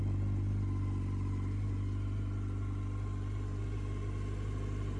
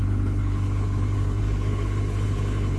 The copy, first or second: second